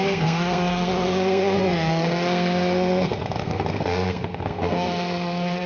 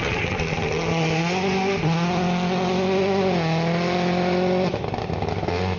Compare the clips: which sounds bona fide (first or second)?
second